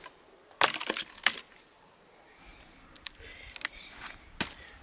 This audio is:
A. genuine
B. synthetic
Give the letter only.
A